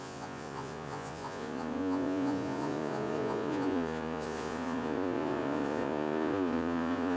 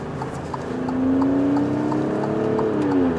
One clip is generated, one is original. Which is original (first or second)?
second